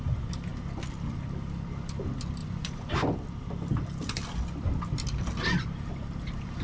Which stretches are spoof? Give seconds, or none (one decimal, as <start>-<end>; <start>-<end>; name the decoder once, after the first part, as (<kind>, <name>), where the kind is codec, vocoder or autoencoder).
2.4-2.9 (vocoder, Vocos)